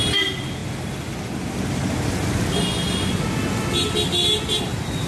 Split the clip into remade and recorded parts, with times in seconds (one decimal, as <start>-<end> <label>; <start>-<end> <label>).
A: 0.0-5.1 recorded